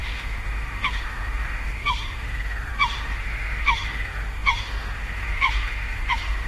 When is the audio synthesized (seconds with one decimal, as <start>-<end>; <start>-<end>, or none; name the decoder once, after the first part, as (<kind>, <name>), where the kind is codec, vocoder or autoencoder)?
0.0-6.5 (autoencoder, DAC-VAE)